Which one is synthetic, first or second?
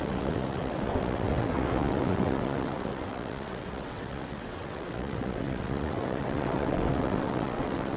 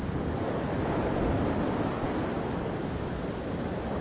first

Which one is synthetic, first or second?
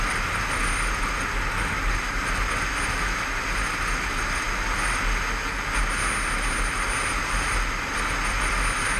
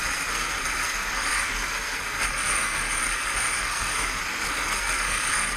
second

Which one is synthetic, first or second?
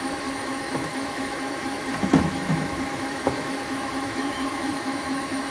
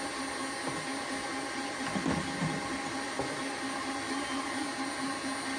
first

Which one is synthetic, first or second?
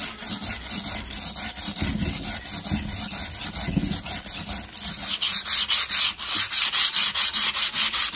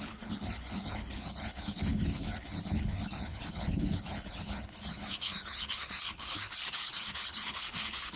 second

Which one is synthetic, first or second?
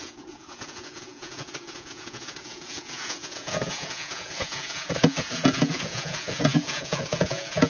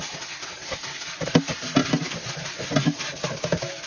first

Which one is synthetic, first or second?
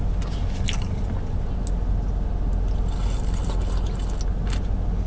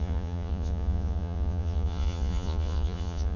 second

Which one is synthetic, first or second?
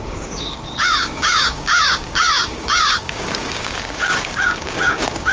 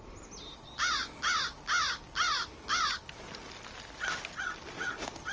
first